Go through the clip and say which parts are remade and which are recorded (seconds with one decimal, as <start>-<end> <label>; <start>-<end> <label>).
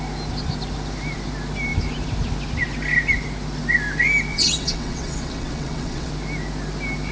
0.0-4.3 recorded; 4.3-6.1 remade; 6.1-7.1 recorded